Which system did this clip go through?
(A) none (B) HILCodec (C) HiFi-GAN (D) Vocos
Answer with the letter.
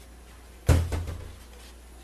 A